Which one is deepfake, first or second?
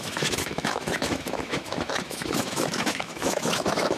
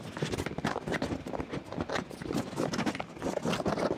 first